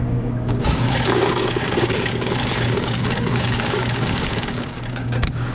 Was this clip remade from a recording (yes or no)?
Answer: yes